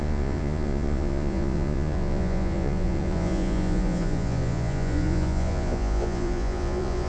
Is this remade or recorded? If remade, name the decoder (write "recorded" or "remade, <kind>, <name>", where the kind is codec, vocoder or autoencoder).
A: remade, vocoder, Vocos